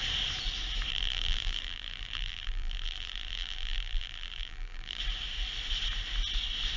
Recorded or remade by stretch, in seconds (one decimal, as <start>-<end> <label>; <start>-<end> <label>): 0.0-0.9 recorded; 0.9-5.0 remade; 5.0-6.8 recorded